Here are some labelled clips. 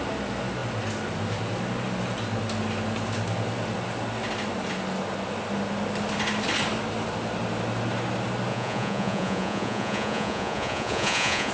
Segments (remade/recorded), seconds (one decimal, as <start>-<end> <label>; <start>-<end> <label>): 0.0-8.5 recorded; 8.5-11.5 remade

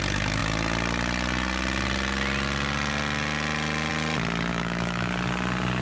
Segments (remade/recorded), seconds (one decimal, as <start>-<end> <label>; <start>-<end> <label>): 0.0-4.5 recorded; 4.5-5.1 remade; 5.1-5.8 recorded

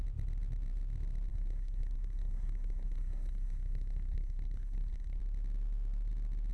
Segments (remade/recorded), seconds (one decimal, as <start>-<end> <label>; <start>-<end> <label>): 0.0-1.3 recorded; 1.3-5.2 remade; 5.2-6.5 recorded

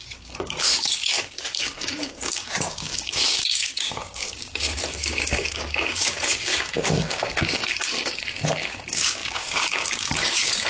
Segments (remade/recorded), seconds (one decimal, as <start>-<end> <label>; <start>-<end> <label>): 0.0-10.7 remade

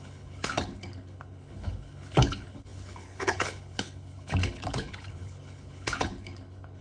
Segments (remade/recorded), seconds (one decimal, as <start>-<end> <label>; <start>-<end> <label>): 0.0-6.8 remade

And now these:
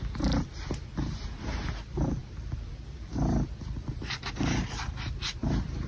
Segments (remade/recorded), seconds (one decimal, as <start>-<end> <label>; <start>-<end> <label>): 0.0-5.9 recorded